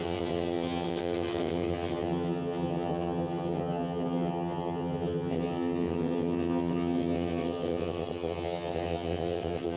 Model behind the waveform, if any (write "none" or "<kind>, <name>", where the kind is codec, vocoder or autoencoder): vocoder, HiFi-GAN